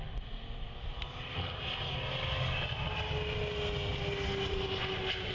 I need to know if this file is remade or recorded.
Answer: recorded